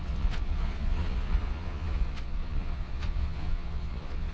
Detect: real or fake fake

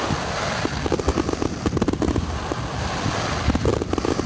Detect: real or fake real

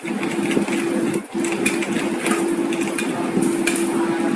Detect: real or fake real